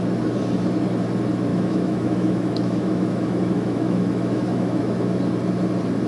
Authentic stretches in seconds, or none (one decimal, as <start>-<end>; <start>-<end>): 0.0-1.5; 5.2-6.1

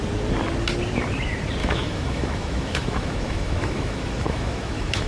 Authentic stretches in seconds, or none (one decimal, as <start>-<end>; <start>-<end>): 0.0-1.6

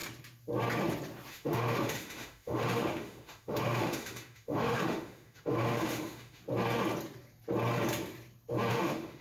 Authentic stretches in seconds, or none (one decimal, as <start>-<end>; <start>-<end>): 0.0-1.3; 6.4-8.7

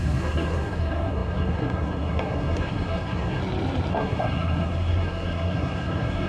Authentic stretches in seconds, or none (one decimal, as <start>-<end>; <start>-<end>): 3.4-3.9